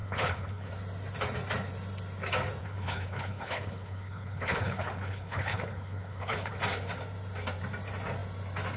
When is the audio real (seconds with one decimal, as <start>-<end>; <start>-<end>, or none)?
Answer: 0.7-2.6; 6.5-8.8